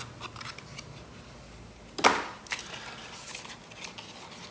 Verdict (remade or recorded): recorded